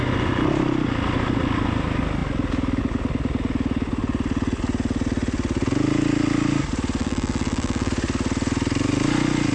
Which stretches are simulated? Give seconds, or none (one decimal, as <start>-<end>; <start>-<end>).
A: 7.0-7.9